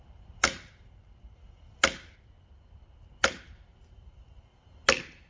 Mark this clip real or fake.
real